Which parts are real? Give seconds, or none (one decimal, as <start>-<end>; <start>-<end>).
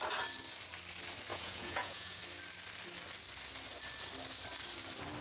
0.0-1.3; 2.2-5.2